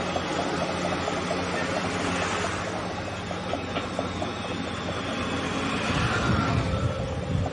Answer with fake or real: real